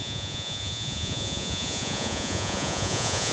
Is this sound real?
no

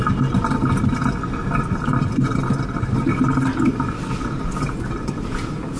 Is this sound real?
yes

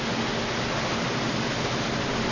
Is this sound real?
yes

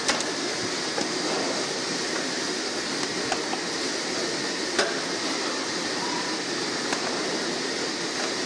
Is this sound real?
yes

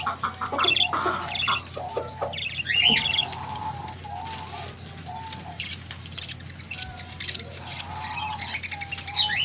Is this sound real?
yes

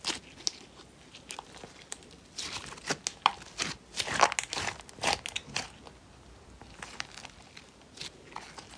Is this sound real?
yes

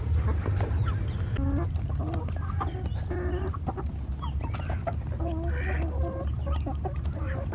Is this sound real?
yes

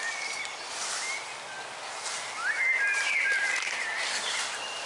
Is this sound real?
yes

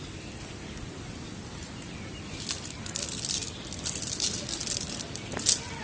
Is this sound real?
yes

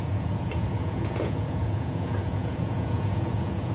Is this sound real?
no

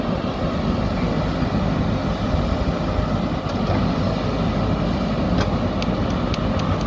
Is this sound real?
yes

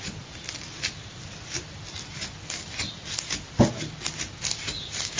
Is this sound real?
yes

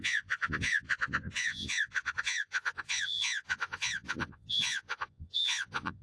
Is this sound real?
no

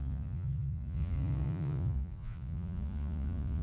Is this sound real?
no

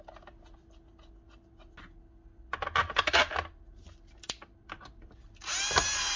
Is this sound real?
yes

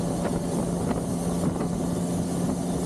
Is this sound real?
yes